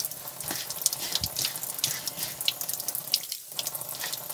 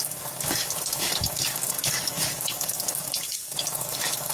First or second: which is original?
first